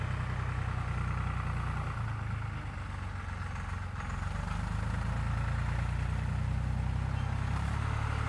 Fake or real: real